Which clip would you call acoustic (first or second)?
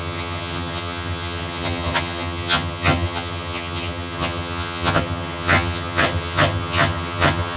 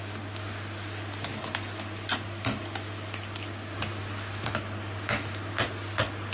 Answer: second